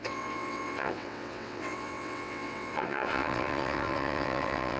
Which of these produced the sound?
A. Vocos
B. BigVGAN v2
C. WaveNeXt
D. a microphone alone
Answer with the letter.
C